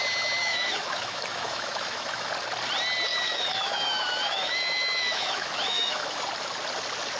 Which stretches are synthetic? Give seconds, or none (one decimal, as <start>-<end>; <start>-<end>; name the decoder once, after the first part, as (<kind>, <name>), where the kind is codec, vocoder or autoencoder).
0.4-2.3 (autoencoder, DAC-VAE); 3.1-6.2